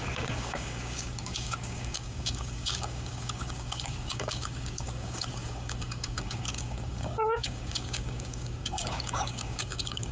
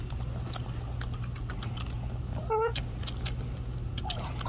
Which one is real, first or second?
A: second